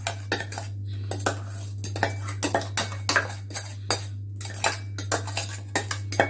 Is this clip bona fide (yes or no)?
yes